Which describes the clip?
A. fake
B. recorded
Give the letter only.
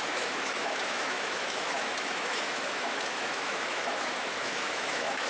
A